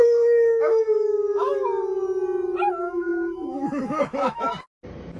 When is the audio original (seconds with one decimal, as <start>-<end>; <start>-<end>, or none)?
1.9-2.7; 4.5-5.2